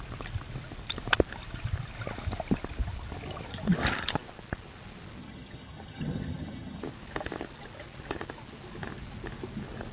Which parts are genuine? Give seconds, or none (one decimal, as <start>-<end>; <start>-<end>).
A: 0.0-5.2; 6.8-9.9